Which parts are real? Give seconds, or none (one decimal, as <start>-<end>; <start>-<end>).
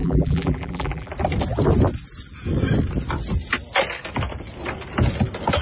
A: 1.1-5.6